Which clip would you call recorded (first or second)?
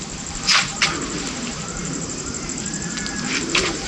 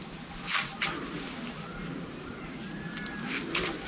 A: second